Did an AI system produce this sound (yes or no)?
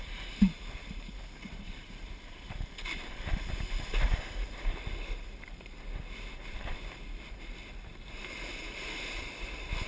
no